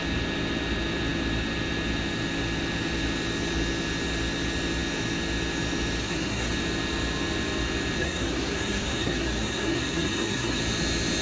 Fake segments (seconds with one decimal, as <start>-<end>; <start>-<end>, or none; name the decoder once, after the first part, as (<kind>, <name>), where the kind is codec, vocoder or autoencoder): 6.0-6.5 (codec, SNAC); 8.0-10.6